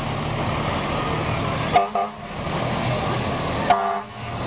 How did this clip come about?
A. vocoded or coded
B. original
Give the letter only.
B